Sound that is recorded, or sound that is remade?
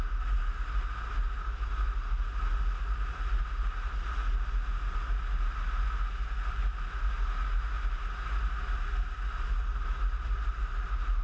recorded